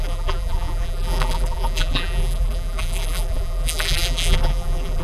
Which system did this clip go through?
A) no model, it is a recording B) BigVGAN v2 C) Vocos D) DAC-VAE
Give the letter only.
B